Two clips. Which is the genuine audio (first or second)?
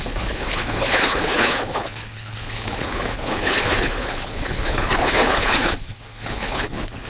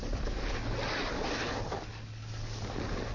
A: second